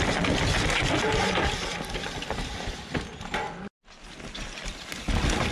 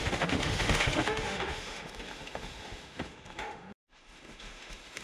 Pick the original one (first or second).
first